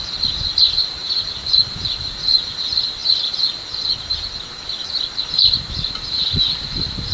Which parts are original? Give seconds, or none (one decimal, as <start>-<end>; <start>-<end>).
0.0-7.1